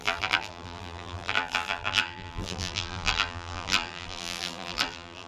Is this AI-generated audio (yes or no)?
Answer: yes